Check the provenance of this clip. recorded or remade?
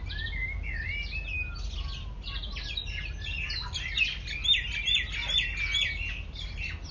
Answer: recorded